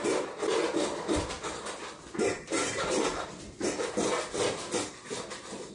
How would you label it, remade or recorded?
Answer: recorded